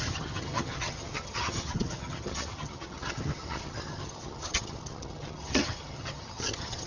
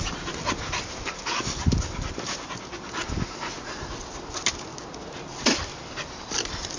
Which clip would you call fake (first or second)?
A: first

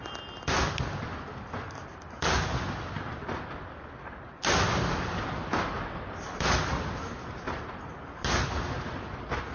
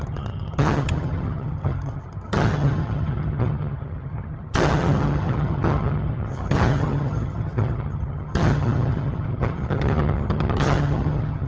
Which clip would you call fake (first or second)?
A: second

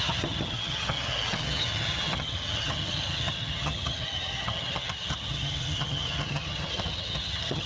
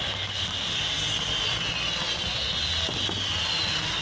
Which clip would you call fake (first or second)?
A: first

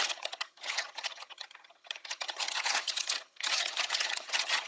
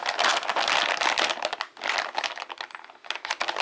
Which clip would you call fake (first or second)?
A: first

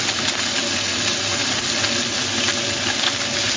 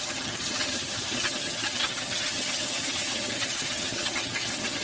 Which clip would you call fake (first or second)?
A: second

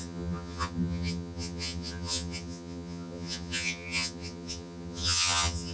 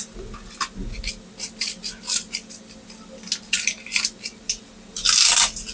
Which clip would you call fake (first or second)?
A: first